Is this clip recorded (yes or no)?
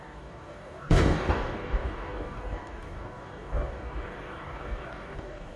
no